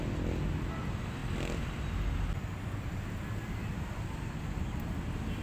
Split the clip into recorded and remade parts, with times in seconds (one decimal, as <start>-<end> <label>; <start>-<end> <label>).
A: 0.0-5.4 recorded